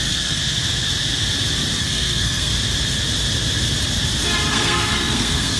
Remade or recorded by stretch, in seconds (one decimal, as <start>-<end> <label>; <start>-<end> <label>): 0.0-0.4 remade; 0.4-1.8 recorded; 1.8-2.5 remade; 2.5-4.5 recorded; 4.5-5.6 remade